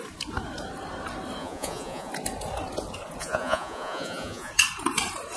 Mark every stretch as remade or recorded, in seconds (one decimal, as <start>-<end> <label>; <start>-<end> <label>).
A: 0.0-1.4 recorded; 1.4-2.1 remade; 2.1-3.2 recorded; 3.2-4.5 remade; 4.5-5.4 recorded